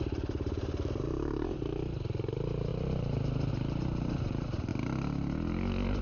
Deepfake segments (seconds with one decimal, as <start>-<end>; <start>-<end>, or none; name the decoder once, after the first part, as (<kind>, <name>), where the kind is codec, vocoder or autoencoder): 0.0-4.7 (vocoder, BigVGAN v2)